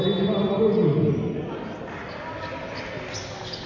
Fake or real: real